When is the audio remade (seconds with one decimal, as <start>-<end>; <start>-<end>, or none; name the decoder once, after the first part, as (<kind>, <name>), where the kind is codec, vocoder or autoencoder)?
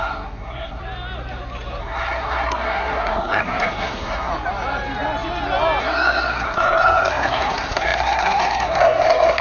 0.0-0.8 (codec, SNAC); 1.8-4.3; 5.8-9.4